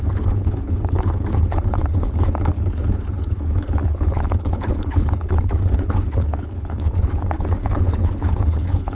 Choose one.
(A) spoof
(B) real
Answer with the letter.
A